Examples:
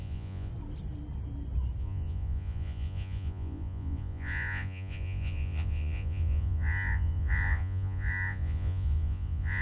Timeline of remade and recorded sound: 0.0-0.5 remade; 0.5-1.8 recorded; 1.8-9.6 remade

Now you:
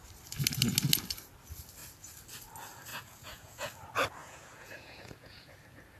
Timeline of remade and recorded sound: 0.0-2.9 recorded; 2.9-3.7 remade; 3.7-4.2 recorded; 4.2-5.6 remade; 5.6-6.0 recorded

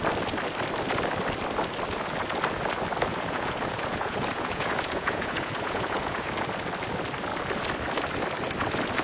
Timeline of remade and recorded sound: 0.0-3.1 recorded; 3.1-6.3 remade; 6.3-9.0 recorded